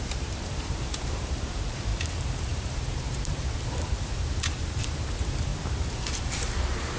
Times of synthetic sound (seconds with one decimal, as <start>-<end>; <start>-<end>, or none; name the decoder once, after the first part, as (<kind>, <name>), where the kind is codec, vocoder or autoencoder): 0.0-7.0 (vocoder, BigVGAN v2)